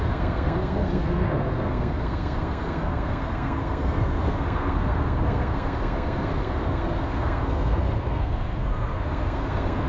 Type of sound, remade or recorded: remade